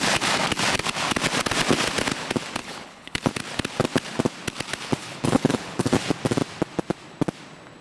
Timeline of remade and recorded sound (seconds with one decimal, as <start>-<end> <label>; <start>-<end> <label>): 0.0-2.6 recorded; 2.6-3.3 remade; 3.3-5.0 recorded; 5.0-5.9 remade; 5.9-7.8 recorded